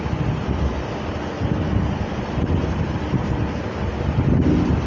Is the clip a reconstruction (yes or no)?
no